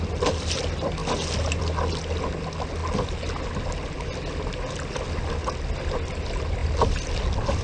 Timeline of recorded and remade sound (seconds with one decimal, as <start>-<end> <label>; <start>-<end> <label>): 0.0-7.6 recorded